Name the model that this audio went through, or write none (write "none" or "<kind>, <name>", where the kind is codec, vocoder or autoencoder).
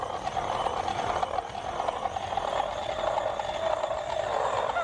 none